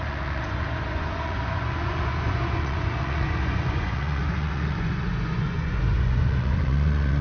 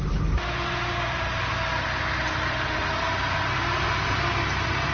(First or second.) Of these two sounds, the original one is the second